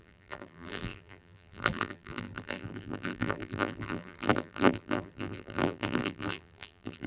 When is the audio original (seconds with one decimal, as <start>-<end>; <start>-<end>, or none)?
none